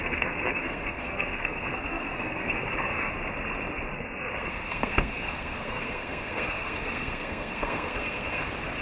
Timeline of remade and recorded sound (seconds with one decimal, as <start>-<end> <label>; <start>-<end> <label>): 0.0-3.1 remade; 3.1-3.9 recorded; 3.9-8.4 remade; 8.4-8.8 recorded